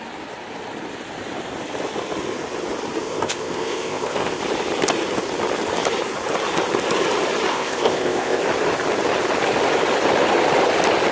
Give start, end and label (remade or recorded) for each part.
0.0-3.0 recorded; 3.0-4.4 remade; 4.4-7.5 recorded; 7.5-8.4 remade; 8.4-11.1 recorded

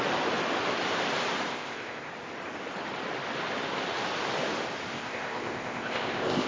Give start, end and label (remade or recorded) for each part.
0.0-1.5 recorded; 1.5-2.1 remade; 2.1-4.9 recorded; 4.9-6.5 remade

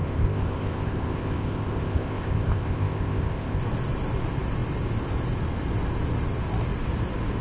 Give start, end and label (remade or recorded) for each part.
0.0-3.6 remade; 3.6-7.4 recorded

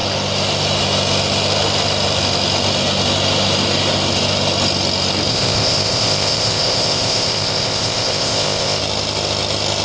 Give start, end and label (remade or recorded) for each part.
0.0-5.3 recorded; 5.3-8.8 remade; 8.8-9.8 recorded

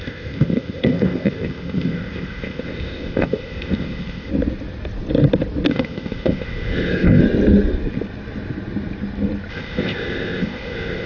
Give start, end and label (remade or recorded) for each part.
0.0-4.3 remade; 4.3-5.7 recorded; 5.7-7.2 remade; 7.2-9.5 recorded; 9.5-11.1 remade

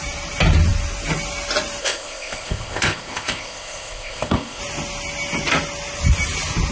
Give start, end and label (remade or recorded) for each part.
0.0-1.8 recorded; 1.8-4.6 remade; 4.6-6.7 recorded

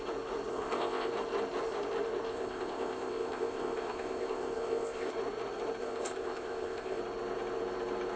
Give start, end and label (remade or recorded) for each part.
0.0-0.5 recorded; 0.5-1.1 remade; 1.1-2.3 recorded; 2.3-5.1 remade; 5.1-5.8 recorded; 5.8-7.0 remade; 7.0-8.2 recorded

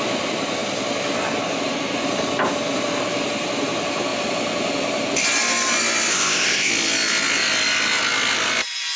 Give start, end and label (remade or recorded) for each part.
0.0-6.1 recorded; 6.1-6.7 remade; 6.7-9.0 recorded